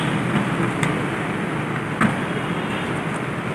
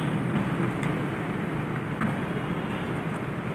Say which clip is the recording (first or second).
first